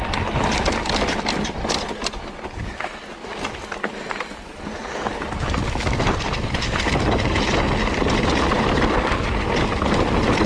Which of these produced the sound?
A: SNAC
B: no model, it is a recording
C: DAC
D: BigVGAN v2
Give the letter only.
B